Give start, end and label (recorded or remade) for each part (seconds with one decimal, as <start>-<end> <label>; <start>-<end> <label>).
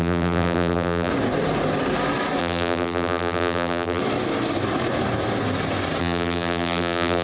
0.0-1.1 remade; 1.1-2.4 recorded; 2.4-4.0 remade; 4.0-6.0 recorded; 6.0-7.2 remade